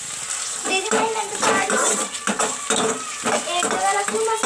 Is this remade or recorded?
recorded